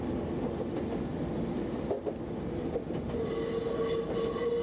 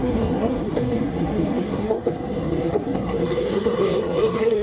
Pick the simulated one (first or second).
second